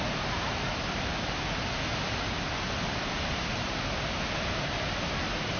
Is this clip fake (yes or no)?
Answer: no